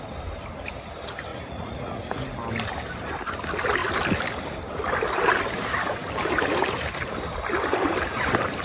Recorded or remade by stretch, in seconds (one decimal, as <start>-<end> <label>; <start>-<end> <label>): 0.0-1.3 recorded; 1.3-2.2 remade; 2.2-8.6 recorded